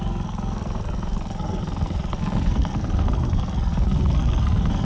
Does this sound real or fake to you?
fake